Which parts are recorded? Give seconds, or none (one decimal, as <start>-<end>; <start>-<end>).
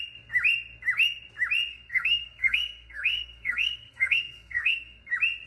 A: 0.0-1.7; 5.0-5.5